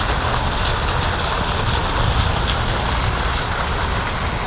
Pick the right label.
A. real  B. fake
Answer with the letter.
A